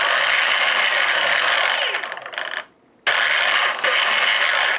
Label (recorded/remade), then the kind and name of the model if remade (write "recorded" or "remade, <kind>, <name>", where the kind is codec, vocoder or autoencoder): recorded